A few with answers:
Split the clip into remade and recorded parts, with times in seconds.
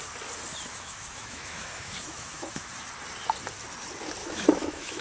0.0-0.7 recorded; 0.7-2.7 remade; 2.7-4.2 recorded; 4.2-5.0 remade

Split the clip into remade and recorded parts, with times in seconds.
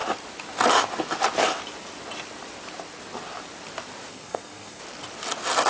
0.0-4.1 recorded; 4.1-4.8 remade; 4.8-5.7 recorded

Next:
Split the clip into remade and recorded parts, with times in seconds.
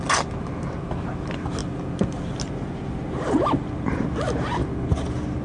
0.0-5.4 recorded